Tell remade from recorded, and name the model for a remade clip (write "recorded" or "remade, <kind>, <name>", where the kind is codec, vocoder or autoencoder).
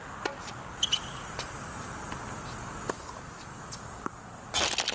recorded